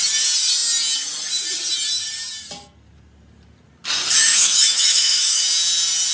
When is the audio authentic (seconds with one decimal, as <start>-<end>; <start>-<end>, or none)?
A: 0.0-4.2; 5.4-6.1